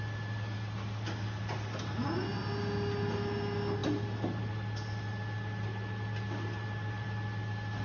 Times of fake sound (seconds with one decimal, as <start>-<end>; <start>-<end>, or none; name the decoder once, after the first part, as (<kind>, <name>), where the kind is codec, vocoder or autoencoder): none